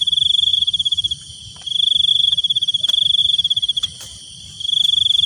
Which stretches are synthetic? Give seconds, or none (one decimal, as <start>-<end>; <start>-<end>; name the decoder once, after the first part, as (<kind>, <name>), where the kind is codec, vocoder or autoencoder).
0.5-1.2 (vocoder, BigVGAN v2); 2.1-2.8; 3.2-4.5